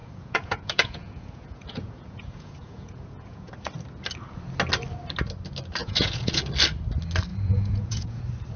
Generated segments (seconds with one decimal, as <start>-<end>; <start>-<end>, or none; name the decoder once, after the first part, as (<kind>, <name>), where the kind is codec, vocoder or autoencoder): 0.0-3.5 (vocoder, Vocos); 5.8-6.4; 7.3-8.2